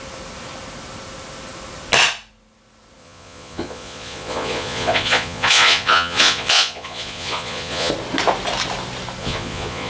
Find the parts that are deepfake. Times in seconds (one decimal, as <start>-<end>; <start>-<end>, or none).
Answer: 3.0-7.9; 9.2-9.9